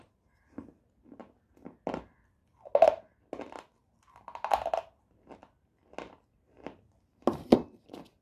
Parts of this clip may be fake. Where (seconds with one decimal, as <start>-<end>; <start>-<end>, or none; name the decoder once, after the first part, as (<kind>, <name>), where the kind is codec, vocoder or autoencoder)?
none